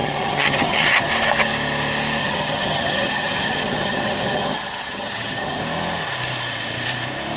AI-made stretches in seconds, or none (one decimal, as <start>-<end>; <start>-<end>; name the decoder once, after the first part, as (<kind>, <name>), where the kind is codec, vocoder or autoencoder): 0.0-1.1 (vocoder, HiFi-GAN); 2.2-5.6